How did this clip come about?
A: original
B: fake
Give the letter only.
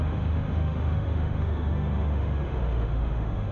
B